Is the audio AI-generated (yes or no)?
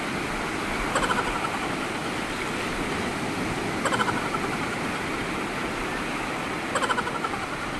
no